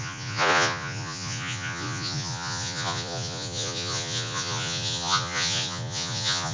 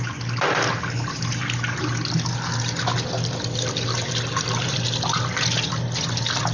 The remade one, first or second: first